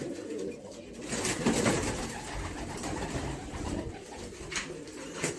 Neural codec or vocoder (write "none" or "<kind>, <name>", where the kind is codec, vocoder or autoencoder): vocoder, BigVGAN v2